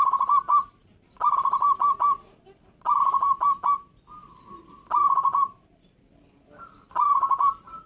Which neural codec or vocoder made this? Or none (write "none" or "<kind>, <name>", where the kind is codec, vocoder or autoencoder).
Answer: none